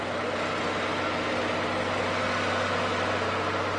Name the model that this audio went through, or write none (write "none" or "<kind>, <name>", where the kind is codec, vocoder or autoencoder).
none